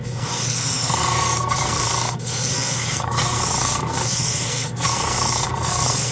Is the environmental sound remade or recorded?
remade